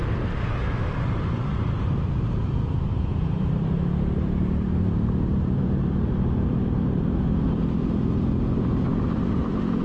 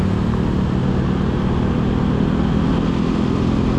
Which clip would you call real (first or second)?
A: second